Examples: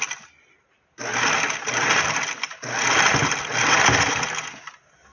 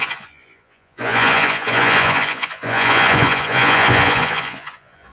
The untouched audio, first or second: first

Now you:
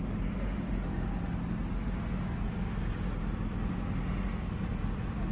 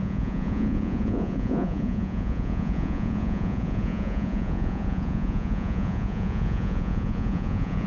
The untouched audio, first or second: first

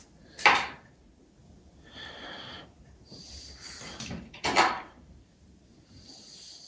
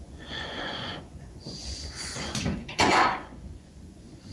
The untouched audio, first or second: first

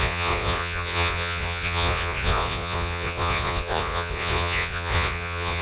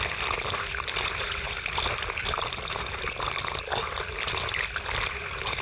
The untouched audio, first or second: second